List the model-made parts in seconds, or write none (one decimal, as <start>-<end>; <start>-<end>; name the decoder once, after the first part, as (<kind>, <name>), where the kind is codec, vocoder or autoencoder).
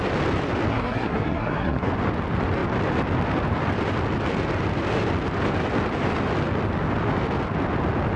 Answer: 0.7-1.9 (codec, SNAC)